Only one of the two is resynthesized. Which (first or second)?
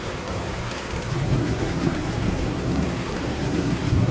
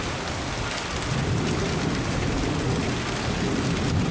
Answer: first